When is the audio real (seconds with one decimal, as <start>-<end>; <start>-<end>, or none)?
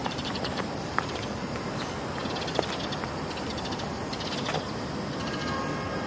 1.6-6.1